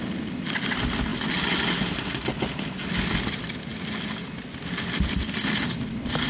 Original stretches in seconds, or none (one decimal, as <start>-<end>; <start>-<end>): 0.0-6.3